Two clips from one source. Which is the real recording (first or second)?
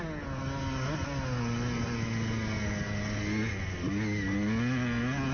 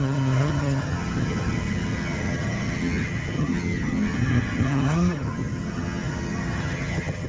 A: first